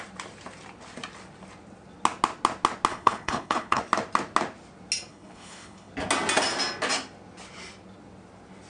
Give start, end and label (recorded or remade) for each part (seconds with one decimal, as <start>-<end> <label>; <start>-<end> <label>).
0.0-2.9 recorded; 2.9-3.8 remade; 3.8-5.1 recorded; 5.1-5.9 remade; 5.9-8.7 recorded